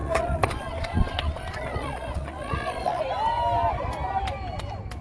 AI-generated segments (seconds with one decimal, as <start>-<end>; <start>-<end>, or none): 0.0-3.0